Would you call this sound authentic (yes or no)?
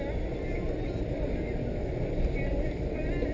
yes